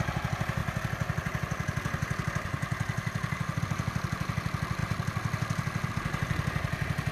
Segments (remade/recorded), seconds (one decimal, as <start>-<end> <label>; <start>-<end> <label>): 0.0-7.1 recorded